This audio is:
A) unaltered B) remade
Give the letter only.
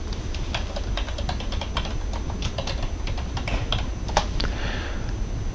A